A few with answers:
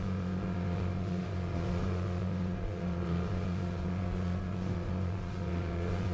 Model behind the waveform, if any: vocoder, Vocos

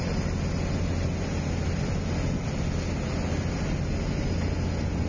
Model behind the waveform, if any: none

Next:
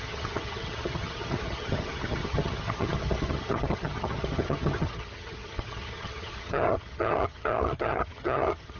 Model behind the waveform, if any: vocoder, HiFi-GAN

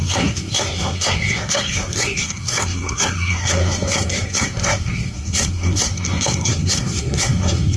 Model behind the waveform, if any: codec, SNAC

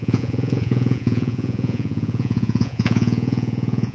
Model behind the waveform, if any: vocoder, Vocos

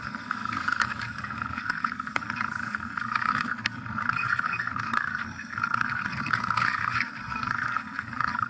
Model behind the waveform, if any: codec, SNAC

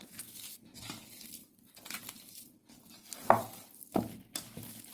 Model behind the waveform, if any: none